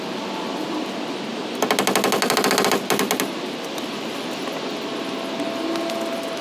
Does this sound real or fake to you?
real